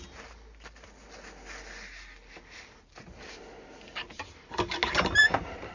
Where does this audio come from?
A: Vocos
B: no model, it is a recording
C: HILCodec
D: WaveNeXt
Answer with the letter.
B